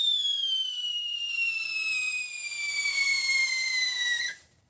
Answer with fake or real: fake